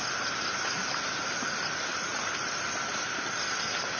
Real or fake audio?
real